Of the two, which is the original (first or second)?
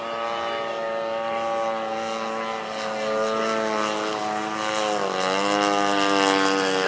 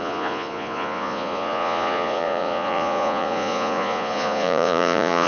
first